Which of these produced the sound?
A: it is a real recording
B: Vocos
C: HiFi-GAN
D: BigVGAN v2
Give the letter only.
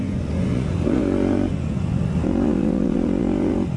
B